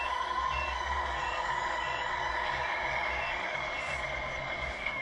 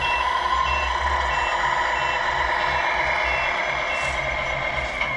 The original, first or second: second